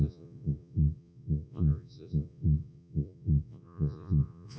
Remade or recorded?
remade